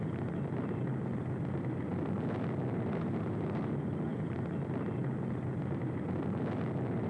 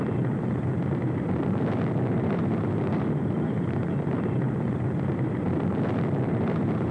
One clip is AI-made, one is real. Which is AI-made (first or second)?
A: second